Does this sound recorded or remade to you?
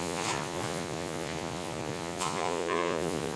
remade